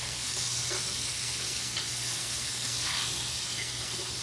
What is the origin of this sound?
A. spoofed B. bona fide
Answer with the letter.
A